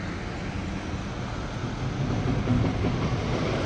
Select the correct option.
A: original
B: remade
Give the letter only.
A